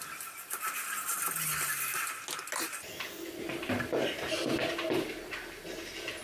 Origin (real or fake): real